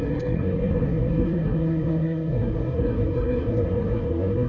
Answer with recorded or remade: remade